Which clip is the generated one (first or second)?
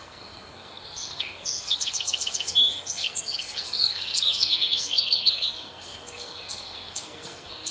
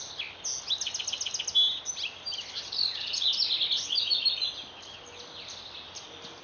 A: first